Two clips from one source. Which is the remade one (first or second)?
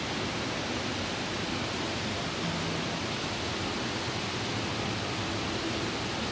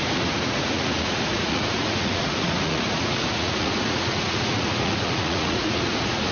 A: second